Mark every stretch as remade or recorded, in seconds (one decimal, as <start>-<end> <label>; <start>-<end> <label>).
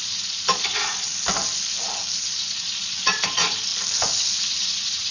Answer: 0.0-1.1 remade; 1.1-2.2 recorded; 2.2-3.7 remade; 3.7-4.5 recorded; 4.5-5.1 remade